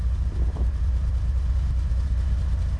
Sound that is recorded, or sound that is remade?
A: remade